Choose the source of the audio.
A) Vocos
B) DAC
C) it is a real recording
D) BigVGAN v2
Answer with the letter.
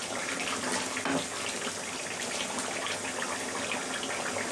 C